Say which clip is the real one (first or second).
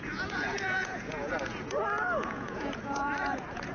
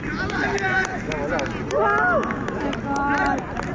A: second